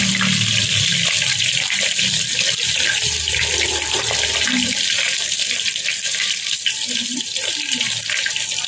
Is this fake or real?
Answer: real